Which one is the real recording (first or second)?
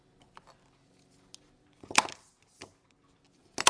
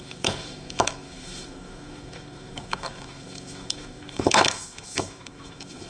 first